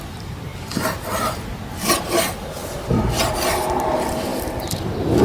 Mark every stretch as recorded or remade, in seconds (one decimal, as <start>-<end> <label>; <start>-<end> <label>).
0.0-5.2 recorded